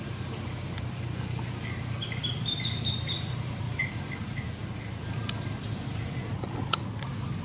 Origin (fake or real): real